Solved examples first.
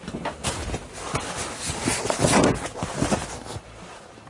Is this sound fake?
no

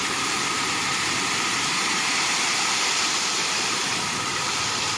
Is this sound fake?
yes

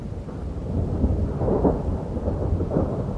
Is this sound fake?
yes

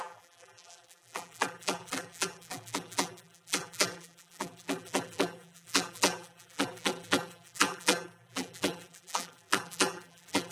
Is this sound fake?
yes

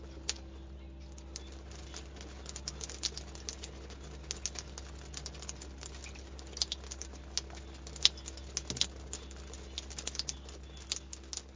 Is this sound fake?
no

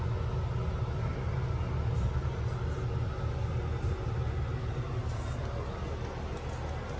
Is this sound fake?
no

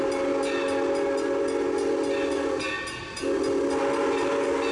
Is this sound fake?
no